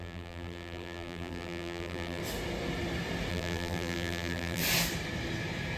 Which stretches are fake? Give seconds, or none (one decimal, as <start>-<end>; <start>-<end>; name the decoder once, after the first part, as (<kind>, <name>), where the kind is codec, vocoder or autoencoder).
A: 0.0-2.2 (vocoder, BigVGAN v2); 3.3-4.6